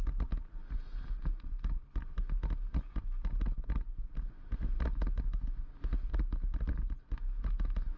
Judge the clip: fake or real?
real